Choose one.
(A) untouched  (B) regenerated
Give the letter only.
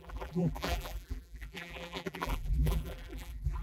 B